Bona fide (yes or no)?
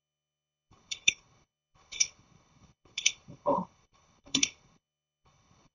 no